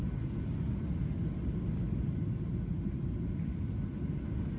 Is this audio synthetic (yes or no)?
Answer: no